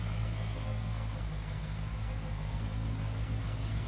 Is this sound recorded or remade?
remade